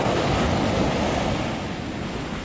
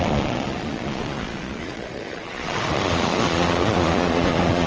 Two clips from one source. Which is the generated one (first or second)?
second